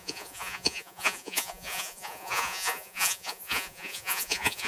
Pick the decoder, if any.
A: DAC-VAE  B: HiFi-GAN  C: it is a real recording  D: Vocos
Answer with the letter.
D